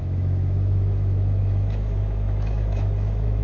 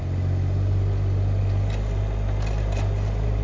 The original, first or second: second